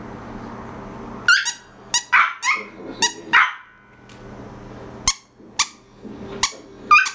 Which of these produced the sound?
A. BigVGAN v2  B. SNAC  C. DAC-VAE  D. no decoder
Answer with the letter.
D